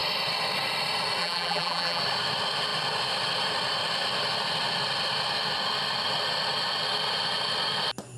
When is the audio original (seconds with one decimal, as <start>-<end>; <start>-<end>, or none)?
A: 0.0-1.2; 2.0-8.2